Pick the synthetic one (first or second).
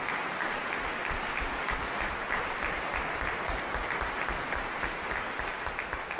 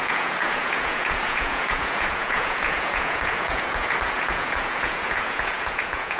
second